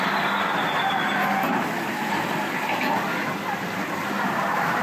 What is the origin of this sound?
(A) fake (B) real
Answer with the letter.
B